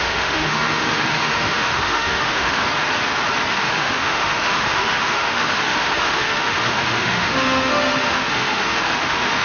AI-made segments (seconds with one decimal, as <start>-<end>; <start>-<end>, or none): 0.0-2.6; 3.5-9.4